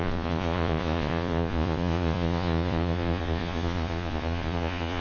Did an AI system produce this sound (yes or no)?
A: yes